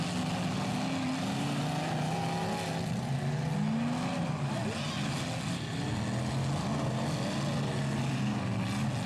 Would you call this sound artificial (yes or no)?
no